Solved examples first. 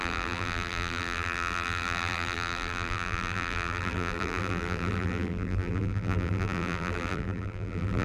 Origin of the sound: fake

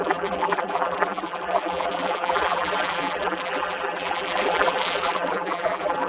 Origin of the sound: fake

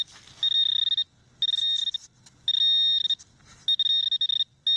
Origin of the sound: real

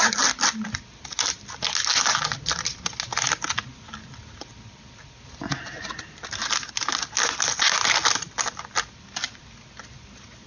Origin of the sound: real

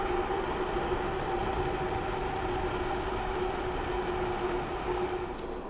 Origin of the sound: real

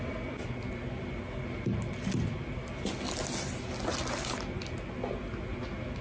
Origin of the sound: real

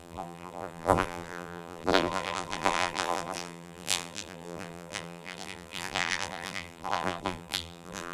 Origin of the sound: fake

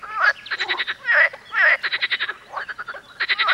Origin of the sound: real